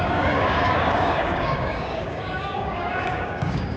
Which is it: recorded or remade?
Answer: remade